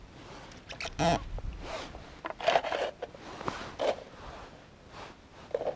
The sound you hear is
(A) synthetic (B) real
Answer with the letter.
B